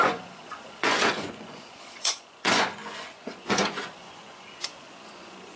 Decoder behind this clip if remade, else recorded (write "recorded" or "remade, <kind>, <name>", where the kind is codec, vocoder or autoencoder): remade, vocoder, Vocos